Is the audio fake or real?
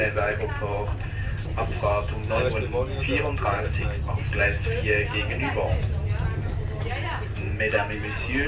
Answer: real